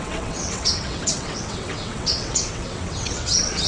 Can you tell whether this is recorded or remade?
remade